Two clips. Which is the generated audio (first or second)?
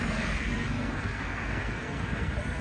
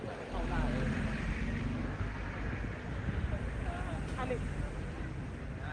first